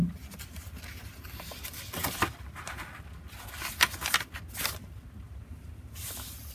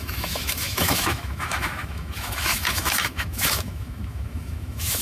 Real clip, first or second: first